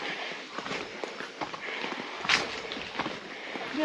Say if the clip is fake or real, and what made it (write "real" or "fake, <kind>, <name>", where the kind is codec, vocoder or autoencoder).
real